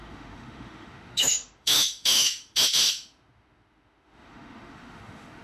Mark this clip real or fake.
fake